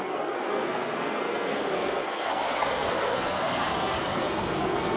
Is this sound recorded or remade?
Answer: remade